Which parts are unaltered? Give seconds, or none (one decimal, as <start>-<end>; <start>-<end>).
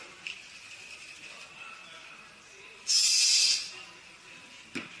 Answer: 0.0-5.0